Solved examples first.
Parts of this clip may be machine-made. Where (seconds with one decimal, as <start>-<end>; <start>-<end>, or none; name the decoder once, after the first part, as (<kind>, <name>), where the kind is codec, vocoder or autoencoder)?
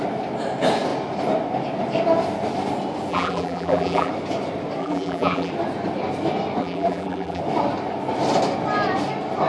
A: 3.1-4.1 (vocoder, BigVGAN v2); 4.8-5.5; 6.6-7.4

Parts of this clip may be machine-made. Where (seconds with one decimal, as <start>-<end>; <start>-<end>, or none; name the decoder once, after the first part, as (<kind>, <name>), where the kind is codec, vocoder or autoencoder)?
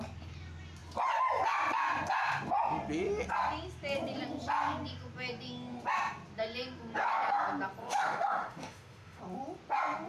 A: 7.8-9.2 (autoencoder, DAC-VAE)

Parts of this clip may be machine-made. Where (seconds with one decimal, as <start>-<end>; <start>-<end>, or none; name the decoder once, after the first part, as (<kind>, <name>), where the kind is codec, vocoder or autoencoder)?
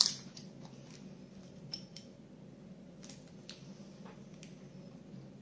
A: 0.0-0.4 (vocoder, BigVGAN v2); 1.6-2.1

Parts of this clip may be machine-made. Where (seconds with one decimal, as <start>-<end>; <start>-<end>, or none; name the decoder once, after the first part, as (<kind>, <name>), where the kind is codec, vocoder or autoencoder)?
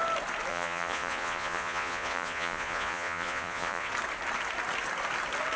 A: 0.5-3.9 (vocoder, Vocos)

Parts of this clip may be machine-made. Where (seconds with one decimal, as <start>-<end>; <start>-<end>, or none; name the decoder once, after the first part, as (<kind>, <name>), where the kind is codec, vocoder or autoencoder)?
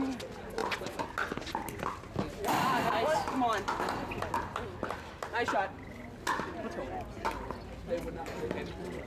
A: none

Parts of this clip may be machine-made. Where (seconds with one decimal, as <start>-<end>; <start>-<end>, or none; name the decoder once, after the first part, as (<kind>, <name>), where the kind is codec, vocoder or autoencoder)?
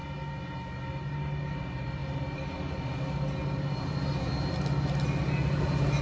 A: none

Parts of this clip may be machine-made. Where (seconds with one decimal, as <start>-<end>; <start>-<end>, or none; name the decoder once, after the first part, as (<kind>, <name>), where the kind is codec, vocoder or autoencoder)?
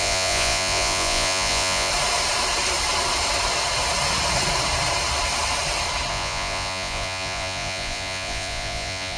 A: 0.0-1.9 (vocoder, Vocos); 6.1-9.2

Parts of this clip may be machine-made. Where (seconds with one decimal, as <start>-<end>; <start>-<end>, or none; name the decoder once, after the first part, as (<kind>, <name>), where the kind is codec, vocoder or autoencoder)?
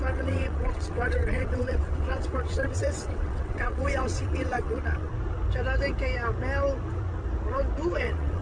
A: 0.0-5.1 (vocoder, WaveNeXt); 8.0-8.4